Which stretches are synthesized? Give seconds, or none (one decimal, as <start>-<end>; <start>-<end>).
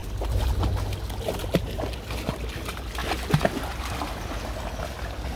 1.4-2.0